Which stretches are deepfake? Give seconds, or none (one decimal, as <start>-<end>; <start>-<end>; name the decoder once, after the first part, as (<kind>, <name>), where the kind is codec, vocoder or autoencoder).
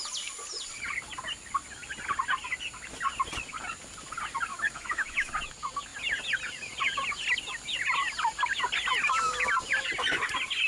4.5-5.3 (autoencoder, DAC-VAE)